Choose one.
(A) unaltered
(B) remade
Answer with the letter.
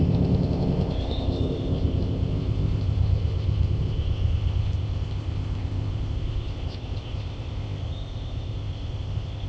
B